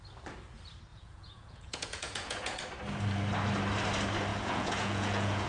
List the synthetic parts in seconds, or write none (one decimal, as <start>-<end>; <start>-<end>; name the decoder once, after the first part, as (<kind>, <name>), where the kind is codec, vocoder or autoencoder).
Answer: 0.9-2.6 (vocoder, Vocos); 4.3-5.5